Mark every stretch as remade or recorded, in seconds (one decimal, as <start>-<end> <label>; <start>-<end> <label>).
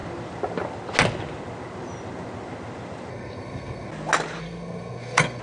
0.0-3.1 recorded; 3.1-3.9 remade; 3.9-4.4 recorded; 4.4-5.4 remade